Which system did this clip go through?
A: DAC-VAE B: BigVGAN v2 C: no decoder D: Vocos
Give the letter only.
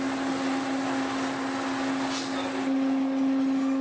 C